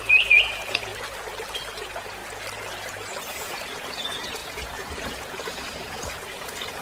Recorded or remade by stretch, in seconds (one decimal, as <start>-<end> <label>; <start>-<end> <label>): 0.0-0.9 remade; 0.9-1.7 recorded; 1.7-2.2 remade; 2.2-3.3 recorded; 3.3-6.8 remade